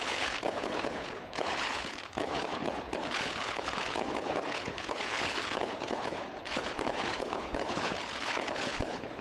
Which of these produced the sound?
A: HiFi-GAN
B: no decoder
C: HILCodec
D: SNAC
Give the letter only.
C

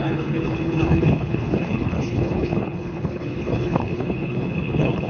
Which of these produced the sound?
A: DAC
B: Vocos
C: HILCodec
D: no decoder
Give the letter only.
C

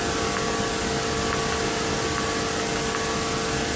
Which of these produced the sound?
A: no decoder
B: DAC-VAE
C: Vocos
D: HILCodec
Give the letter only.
A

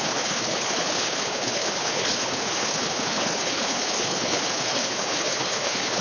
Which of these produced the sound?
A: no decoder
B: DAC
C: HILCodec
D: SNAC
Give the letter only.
C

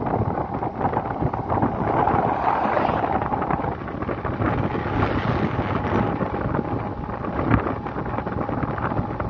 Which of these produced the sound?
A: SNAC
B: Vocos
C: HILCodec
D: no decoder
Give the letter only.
D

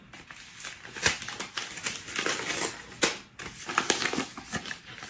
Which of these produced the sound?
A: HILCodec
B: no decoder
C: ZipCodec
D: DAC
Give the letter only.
B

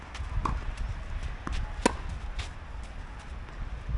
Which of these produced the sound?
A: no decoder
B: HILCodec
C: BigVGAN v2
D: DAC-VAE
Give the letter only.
A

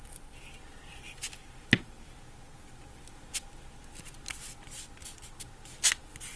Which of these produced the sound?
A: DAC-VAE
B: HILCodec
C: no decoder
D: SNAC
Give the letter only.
C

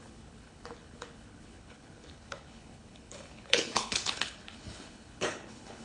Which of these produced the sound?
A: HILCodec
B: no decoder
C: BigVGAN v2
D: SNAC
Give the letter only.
A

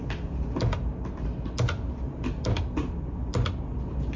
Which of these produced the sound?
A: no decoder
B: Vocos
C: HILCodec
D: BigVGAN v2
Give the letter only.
A